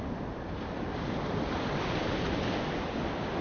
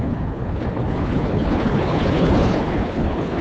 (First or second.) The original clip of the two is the first